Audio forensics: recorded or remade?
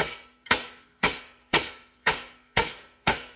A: remade